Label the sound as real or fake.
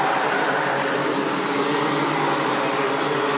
real